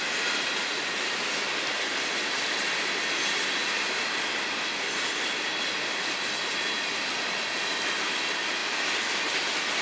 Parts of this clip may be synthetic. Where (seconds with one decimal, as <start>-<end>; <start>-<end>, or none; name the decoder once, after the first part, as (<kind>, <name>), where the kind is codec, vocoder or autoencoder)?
none